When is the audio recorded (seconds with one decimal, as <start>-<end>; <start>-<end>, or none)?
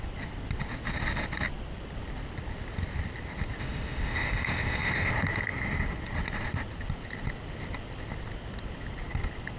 0.0-3.6; 5.1-9.6